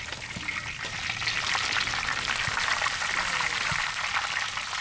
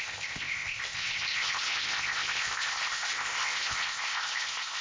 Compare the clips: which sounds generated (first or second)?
second